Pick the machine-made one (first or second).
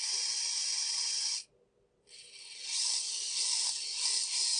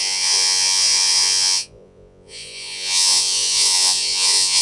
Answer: second